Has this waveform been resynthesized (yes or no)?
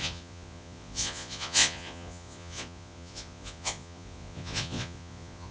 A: yes